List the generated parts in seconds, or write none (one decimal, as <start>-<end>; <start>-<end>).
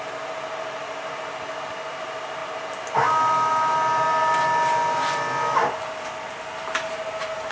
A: none